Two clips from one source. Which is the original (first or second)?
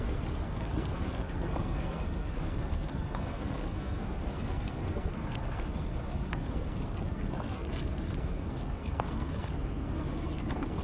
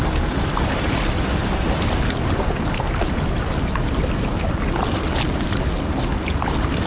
second